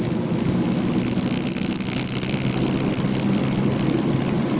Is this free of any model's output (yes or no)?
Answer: yes